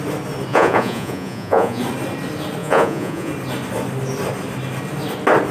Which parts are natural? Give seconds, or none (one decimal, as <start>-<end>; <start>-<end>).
0.0-0.5; 1.8-2.6; 3.3-5.5